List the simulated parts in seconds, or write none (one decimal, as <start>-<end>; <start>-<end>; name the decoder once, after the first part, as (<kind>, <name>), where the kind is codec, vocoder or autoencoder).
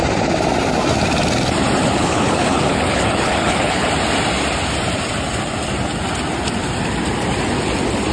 1.8-3.9 (codec, HILCodec)